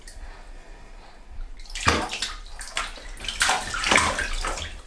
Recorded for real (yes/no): yes